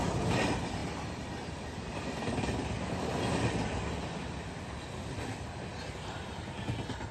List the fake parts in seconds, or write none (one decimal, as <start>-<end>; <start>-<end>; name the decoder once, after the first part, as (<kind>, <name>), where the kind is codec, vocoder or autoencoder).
0.0-5.7 (vocoder, BigVGAN v2); 6.3-7.1